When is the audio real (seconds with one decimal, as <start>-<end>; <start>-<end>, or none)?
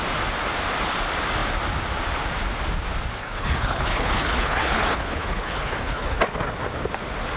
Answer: 0.0-3.2; 6.2-7.4